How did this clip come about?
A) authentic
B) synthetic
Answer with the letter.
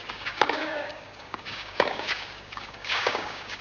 B